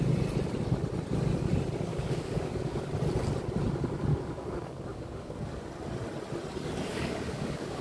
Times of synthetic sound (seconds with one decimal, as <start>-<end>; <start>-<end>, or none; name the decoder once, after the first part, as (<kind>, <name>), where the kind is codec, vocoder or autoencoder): 1.9-2.8 (codec, DAC); 4.1-5.6; 6.9-7.8